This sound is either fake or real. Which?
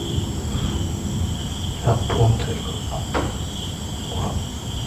fake